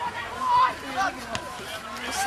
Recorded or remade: recorded